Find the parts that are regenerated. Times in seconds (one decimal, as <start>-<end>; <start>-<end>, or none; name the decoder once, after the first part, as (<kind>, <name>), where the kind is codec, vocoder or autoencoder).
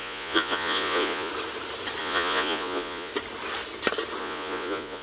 0.0-1.3 (vocoder, Vocos); 2.0-3.1; 4.2-5.0